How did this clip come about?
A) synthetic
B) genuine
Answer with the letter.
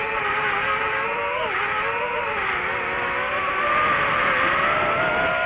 B